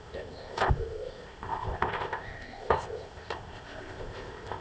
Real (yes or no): no